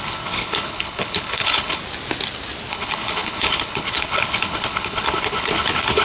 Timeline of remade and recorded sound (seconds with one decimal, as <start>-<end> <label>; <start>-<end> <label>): 0.0-1.8 remade; 1.8-2.7 recorded; 2.7-6.0 remade